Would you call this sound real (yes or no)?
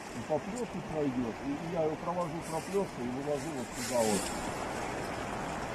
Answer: yes